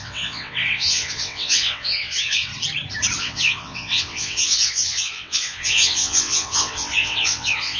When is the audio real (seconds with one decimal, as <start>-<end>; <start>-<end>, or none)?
2.5-3.2